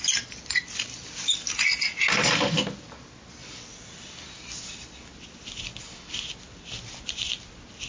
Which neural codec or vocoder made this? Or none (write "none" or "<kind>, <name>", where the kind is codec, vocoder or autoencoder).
none